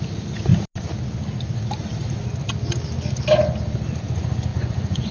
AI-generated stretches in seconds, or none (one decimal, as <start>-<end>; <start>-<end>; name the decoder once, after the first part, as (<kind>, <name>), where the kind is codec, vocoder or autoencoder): 4.5-5.1 (vocoder, Vocos)